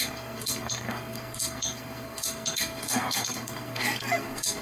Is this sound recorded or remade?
remade